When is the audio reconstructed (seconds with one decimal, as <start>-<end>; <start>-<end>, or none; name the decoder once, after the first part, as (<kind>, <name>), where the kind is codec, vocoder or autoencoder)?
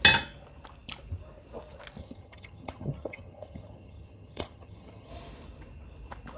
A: 2.0-5.1 (vocoder, HiFi-GAN)